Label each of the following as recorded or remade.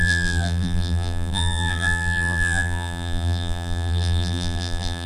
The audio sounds remade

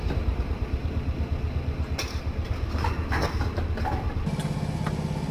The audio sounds recorded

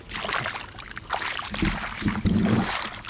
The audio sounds recorded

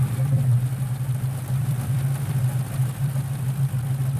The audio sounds remade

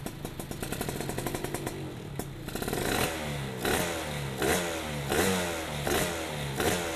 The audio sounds recorded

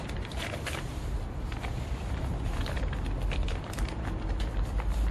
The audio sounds remade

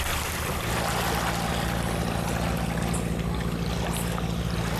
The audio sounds recorded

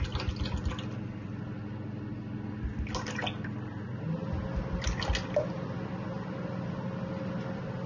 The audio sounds recorded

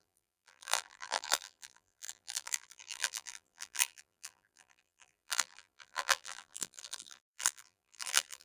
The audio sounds remade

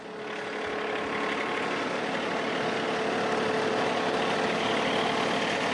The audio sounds recorded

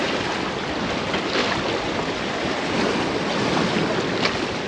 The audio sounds recorded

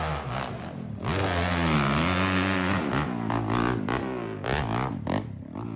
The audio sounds recorded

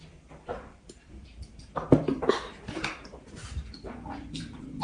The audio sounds remade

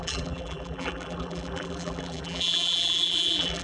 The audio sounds remade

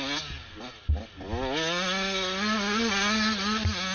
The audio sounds recorded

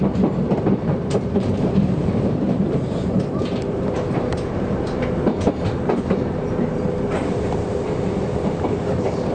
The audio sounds remade